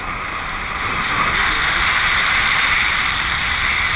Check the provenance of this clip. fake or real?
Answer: fake